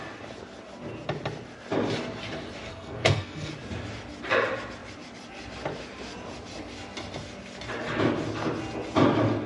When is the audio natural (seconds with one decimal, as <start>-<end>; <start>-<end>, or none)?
0.0-2.7; 3.5-9.5